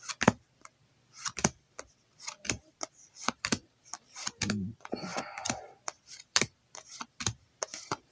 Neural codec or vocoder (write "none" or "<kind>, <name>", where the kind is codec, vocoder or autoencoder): vocoder, BigVGAN v2